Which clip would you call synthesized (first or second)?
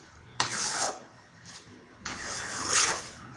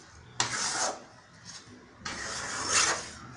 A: first